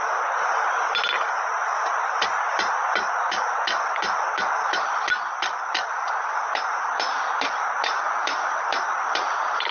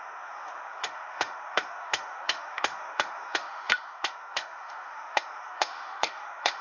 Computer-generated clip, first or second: second